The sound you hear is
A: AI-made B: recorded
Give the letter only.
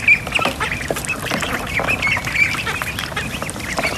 B